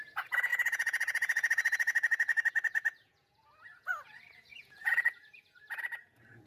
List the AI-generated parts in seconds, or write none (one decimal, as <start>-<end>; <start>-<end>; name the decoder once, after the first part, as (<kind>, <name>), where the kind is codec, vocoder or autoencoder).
0.0-6.5 (vocoder, Vocos)